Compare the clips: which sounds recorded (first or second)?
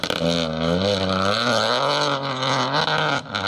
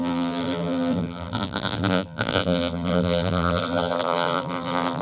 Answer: first